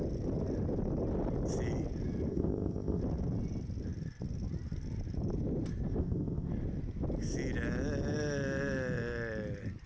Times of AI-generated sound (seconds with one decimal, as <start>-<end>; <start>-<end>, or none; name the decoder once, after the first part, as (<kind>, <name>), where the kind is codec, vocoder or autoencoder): 2.3-3.0 (codec, ZipCodec); 6.0-6.5